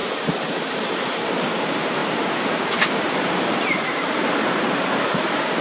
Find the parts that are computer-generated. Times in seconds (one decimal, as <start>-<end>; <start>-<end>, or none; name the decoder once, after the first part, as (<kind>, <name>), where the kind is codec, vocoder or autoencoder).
1.3-5.6 (vocoder, BigVGAN v2)